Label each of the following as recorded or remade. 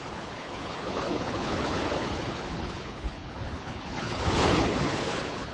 remade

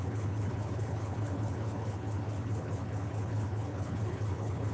remade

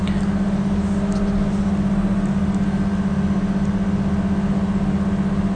recorded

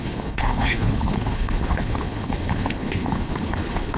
remade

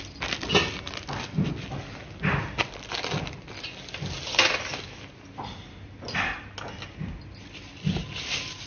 recorded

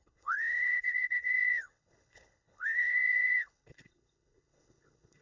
remade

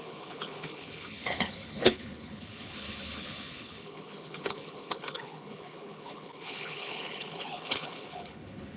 remade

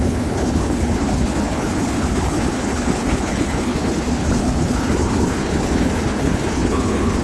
remade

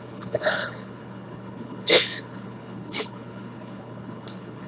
remade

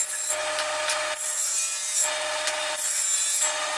recorded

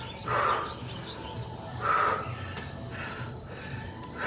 recorded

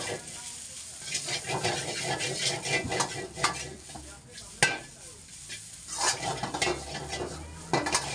recorded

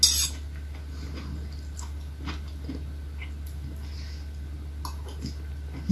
recorded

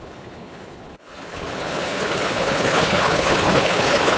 remade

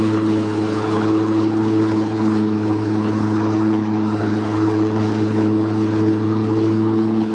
remade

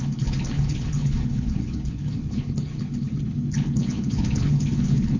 remade